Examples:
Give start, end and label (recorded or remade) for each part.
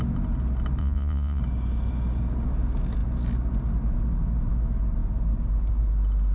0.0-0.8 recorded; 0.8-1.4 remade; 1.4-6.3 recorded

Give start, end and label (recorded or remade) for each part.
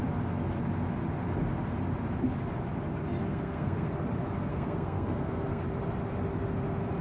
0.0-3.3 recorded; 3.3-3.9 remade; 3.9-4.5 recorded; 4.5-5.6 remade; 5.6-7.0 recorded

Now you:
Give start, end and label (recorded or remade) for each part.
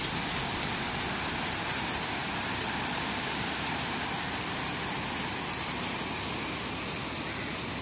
0.0-7.8 recorded